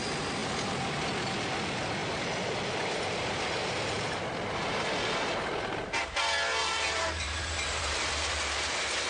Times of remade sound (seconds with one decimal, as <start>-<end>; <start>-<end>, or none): 6.6-8.3